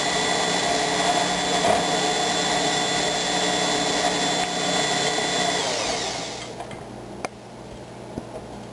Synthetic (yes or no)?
no